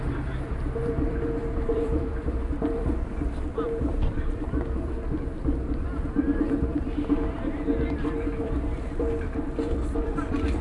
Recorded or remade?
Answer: remade